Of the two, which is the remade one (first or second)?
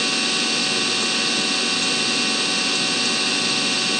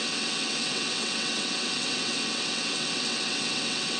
second